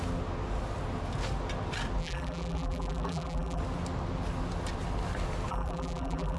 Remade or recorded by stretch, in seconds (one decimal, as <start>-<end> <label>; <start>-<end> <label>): 0.0-2.0 recorded; 2.0-3.6 remade; 3.6-5.5 recorded; 5.5-6.4 remade